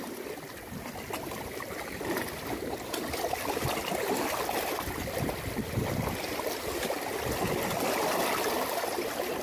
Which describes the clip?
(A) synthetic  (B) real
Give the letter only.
B